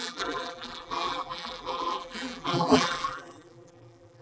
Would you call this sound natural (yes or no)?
no